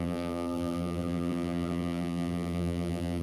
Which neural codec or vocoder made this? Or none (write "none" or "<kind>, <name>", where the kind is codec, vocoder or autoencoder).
vocoder, BigVGAN v2